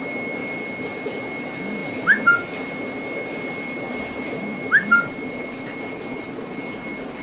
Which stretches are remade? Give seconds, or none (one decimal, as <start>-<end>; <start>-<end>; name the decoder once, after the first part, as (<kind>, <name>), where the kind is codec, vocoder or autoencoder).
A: none

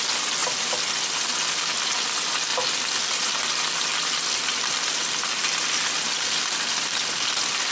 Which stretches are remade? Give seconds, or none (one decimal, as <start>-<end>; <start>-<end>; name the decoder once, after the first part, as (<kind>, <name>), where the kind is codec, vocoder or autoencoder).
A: 0.4-1.3 (vocoder, BigVGAN v2); 2.5-7.1

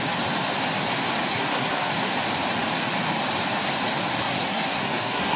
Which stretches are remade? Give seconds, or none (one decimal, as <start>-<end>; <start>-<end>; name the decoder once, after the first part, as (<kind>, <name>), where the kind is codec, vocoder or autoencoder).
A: 1.3-1.9 (codec, SNAC); 4.2-5.4

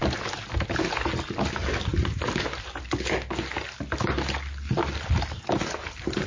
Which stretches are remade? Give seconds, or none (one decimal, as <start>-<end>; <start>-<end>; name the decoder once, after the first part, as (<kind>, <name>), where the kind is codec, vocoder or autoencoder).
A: none

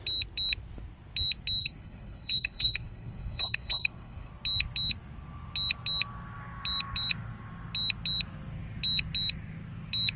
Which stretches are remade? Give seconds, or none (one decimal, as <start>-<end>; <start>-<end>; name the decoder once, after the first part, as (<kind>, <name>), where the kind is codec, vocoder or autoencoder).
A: 1.6-4.3 (codec, HILCodec)

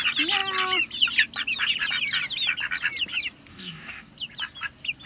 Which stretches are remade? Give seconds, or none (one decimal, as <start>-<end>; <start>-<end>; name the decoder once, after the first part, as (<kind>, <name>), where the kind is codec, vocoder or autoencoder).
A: 3.5-4.1 (codec, DAC)

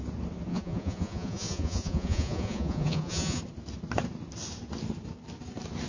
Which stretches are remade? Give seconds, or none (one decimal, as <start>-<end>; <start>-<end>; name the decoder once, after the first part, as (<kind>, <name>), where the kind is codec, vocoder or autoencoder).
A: 0.5-3.4 (vocoder, Vocos)

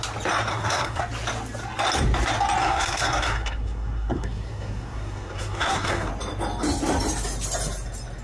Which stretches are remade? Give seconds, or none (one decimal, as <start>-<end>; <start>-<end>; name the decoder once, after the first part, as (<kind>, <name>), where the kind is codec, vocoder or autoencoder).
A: 0.5-1.0 (codec, SNAC); 2.6-6.1